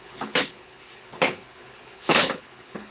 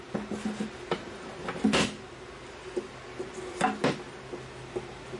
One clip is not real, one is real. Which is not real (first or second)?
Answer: first